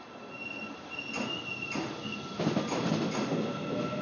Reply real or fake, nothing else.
real